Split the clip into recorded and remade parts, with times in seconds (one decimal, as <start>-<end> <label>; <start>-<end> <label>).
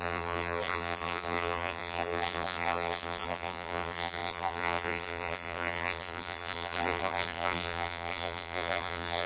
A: 0.0-9.3 remade